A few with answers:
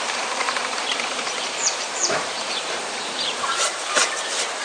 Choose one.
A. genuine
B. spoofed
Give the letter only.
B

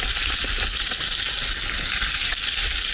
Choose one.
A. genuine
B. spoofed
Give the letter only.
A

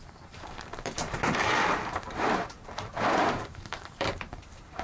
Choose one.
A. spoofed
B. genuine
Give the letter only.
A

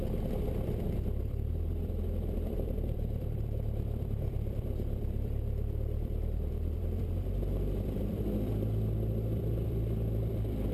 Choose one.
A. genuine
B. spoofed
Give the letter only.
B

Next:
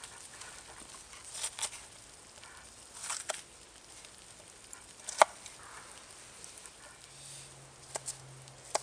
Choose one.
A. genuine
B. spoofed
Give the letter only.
A